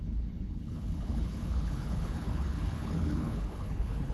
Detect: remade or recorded remade